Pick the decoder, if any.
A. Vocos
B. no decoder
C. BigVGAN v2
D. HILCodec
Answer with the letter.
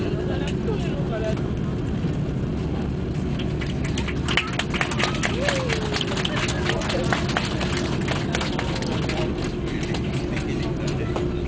B